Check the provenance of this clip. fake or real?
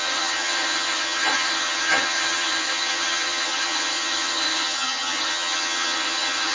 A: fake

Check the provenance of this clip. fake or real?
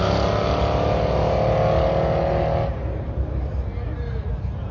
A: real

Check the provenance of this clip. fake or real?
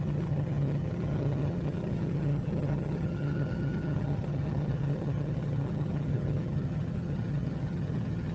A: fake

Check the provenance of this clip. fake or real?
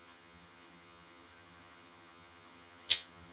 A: fake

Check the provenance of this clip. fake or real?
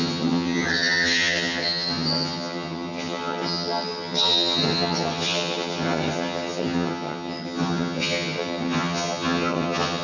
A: fake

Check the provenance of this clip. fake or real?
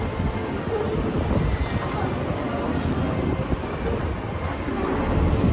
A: real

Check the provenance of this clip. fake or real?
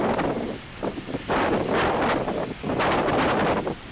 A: real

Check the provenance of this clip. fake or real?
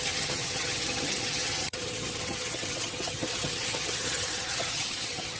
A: fake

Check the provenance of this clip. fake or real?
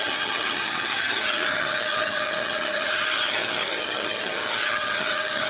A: fake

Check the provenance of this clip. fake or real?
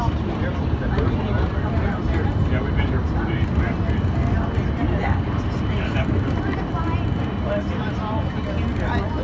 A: real